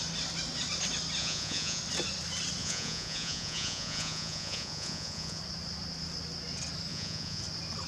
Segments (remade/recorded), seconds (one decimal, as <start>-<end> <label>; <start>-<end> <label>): 0.0-1.2 recorded; 1.2-1.8 remade; 1.8-2.6 recorded; 2.6-5.4 remade; 5.4-6.9 recorded; 6.9-7.4 remade; 7.4-7.9 recorded